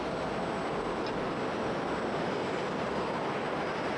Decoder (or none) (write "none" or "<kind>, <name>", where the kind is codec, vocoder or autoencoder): none